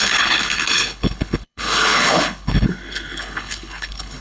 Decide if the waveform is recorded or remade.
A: remade